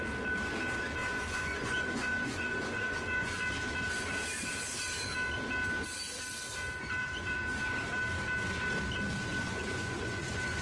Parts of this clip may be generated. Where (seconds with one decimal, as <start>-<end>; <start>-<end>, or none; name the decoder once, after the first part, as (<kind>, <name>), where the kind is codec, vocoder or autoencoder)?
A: 1.0-3.4 (vocoder, Vocos); 7.0-7.6; 9.3-10.6